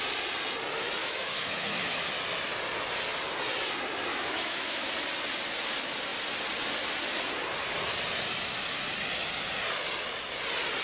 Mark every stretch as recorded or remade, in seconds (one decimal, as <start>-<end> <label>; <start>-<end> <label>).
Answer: 0.0-1.0 recorded; 1.0-2.1 remade; 2.1-4.1 recorded; 4.1-4.9 remade; 4.9-10.8 recorded